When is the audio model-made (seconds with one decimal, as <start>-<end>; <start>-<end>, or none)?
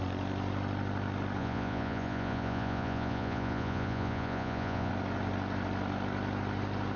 1.4-4.9